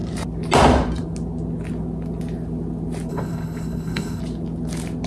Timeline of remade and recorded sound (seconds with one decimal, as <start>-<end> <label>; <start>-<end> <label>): 0.0-3.1 recorded; 3.1-4.2 remade; 4.2-5.1 recorded